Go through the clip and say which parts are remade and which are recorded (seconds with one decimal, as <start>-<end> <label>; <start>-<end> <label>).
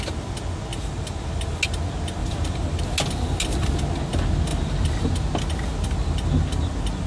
0.0-0.7 recorded; 0.7-1.6 remade; 1.6-2.2 recorded; 2.2-2.8 remade; 2.8-4.5 recorded; 4.5-5.1 remade; 5.1-7.1 recorded